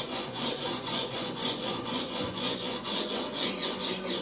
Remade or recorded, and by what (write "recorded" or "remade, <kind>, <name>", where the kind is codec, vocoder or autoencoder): remade, vocoder, Vocos